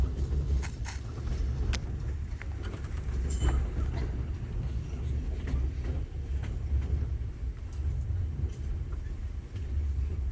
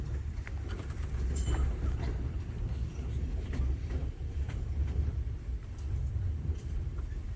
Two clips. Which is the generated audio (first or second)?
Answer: second